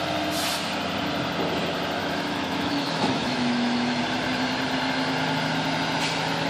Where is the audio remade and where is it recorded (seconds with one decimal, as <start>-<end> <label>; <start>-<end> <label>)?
0.0-2.0 recorded; 2.0-4.0 remade; 4.0-6.5 recorded